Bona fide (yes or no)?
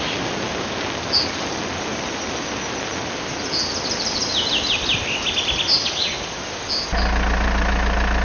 yes